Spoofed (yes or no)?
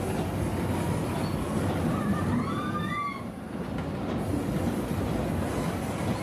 no